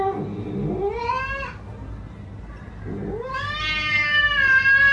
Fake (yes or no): no